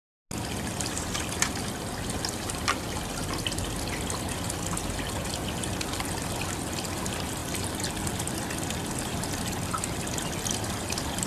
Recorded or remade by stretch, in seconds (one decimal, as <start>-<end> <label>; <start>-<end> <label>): 0.0-11.3 recorded